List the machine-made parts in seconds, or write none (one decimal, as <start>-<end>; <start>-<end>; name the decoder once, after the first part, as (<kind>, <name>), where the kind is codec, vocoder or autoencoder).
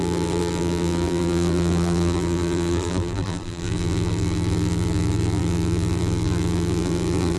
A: 0.0-7.4 (vocoder, BigVGAN v2)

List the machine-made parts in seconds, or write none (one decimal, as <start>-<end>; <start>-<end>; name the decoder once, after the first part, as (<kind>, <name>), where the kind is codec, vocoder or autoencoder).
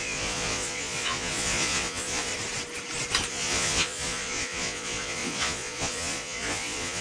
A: 0.0-2.3 (vocoder, Vocos); 3.3-7.0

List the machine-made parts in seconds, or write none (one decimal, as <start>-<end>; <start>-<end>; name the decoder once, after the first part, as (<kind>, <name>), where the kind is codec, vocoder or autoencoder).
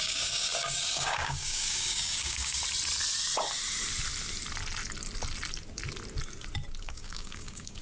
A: 0.0-2.6 (codec, DAC); 6.8-7.8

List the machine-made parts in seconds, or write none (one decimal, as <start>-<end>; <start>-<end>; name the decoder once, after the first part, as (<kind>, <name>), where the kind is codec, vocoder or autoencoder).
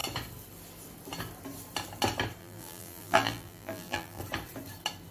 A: 2.4-4.2 (vocoder, BigVGAN v2)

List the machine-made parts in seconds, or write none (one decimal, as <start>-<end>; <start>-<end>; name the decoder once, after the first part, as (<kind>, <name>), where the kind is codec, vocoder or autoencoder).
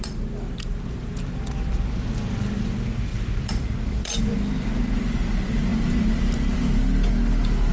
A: none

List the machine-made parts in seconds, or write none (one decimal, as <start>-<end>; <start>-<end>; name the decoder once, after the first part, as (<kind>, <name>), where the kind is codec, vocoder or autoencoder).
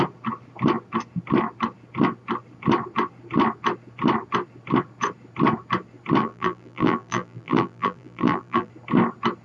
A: 6.2-8.7 (vocoder, BigVGAN v2)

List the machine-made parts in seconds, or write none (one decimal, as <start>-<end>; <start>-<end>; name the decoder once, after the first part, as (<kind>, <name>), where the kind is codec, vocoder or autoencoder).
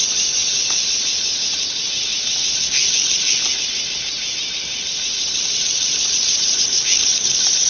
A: none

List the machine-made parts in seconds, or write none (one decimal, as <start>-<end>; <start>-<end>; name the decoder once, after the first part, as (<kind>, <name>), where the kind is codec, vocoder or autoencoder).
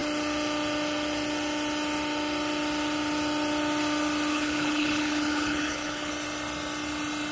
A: 4.3-6.1 (codec, HILCodec)